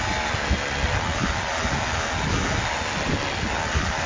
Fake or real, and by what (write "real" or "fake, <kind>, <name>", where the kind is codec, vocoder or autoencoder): real